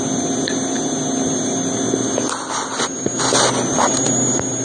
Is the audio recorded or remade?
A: recorded